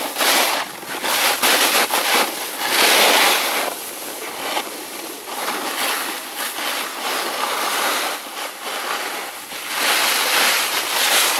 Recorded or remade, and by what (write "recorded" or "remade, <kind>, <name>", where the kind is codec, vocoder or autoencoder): recorded